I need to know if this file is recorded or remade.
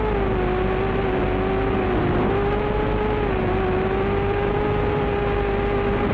recorded